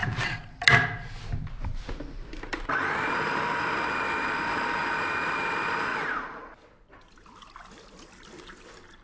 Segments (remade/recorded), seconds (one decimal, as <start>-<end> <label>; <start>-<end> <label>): 0.0-9.0 recorded